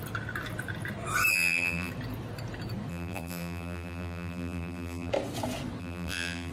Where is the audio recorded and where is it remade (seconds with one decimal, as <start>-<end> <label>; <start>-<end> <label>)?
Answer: 0.0-1.3 recorded; 1.3-1.9 remade; 1.9-2.9 recorded; 2.9-5.1 remade; 5.1-5.8 recorded; 5.8-6.5 remade